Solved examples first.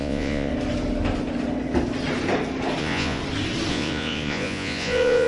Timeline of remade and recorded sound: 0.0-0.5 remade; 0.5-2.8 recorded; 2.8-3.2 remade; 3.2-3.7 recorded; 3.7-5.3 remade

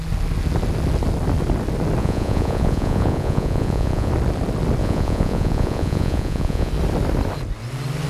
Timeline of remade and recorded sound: 0.0-2.0 recorded; 2.0-4.1 remade; 4.1-4.8 recorded; 4.8-6.7 remade; 6.7-8.1 recorded

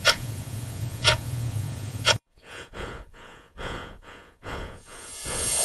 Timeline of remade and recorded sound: 0.0-5.6 remade